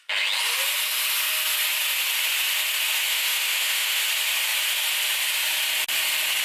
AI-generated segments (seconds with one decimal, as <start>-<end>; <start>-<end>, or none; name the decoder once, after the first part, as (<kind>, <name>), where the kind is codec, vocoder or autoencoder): 3.1-4.0 (autoencoder, DAC-VAE)